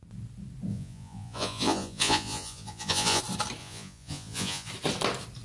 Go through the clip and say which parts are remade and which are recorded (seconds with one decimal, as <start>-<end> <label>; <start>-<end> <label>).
0.0-0.7 recorded; 0.7-3.2 remade; 3.2-3.6 recorded; 3.6-4.7 remade; 4.7-5.4 recorded